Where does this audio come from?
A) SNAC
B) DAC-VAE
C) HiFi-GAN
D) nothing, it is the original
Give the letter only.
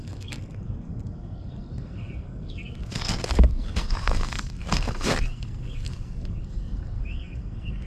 A